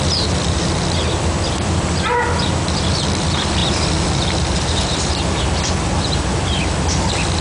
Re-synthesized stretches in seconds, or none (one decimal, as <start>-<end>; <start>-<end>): none